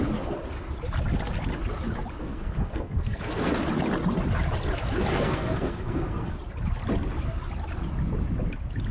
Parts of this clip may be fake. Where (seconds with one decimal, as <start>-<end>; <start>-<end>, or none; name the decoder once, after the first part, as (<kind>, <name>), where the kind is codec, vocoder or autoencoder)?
2.2-3.5 (codec, SNAC); 5.1-6.3